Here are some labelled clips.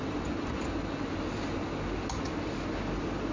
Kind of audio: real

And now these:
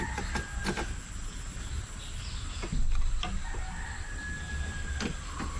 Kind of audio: real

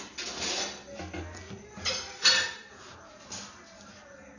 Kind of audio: real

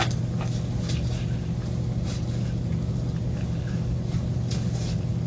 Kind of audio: real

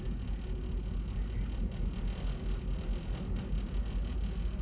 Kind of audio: real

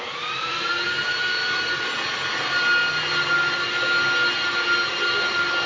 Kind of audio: real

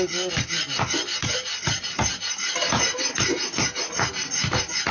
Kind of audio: real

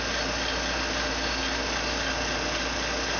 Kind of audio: real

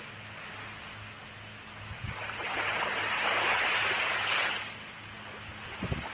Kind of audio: real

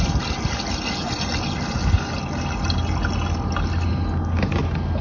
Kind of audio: real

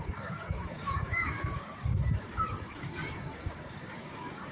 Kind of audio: fake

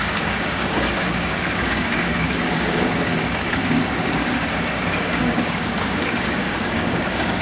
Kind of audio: fake